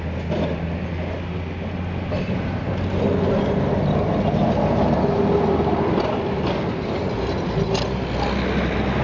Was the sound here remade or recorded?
recorded